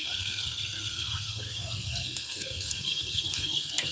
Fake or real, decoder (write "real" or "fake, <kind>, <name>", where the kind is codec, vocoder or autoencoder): fake, codec, SNAC